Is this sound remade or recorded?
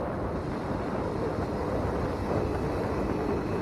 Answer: recorded